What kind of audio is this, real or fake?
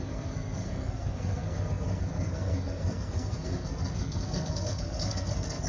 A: fake